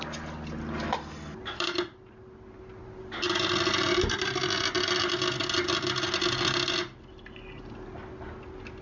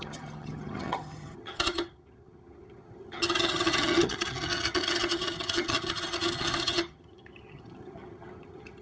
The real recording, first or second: first